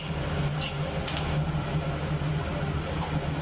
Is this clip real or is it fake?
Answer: real